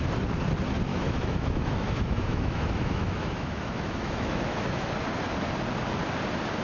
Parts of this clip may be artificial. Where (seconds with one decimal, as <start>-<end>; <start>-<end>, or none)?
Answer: 0.9-4.9